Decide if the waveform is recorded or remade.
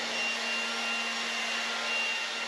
recorded